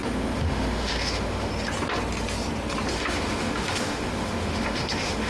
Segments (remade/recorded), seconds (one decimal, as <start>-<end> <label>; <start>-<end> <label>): 0.0-1.5 remade; 1.5-2.9 recorded; 2.9-5.3 remade